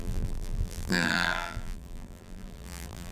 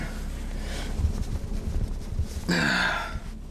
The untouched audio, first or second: second